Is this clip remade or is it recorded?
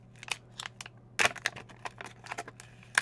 recorded